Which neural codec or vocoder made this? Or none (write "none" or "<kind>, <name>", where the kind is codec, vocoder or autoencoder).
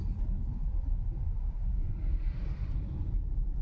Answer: vocoder, BigVGAN v2